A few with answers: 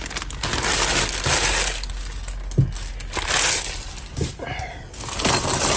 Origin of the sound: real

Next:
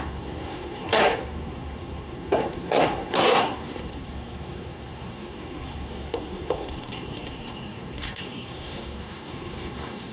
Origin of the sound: fake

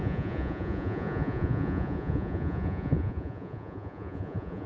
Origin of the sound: fake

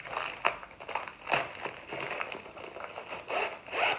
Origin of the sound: real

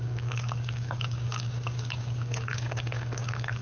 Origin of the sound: fake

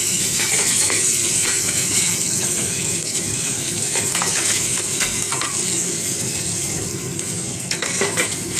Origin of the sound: fake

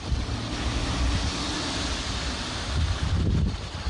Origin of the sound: real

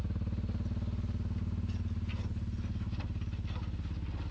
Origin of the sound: real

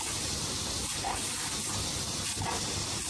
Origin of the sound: real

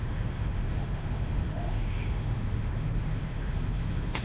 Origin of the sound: fake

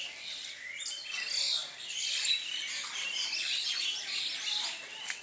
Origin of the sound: real